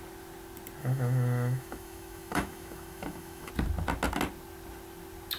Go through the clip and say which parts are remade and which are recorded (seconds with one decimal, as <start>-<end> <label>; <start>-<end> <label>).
0.0-0.8 recorded; 0.8-3.5 remade; 3.5-5.4 recorded